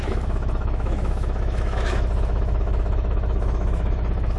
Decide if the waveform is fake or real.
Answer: fake